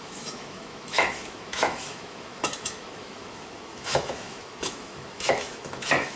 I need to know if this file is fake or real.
fake